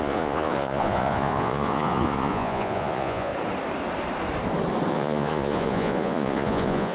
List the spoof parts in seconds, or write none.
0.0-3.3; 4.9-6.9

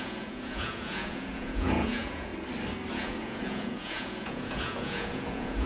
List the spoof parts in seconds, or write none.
0.0-2.3; 2.9-5.7